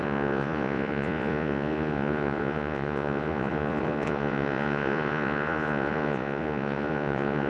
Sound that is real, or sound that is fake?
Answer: fake